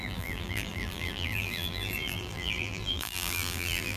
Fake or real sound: fake